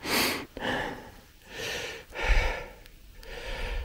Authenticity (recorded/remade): recorded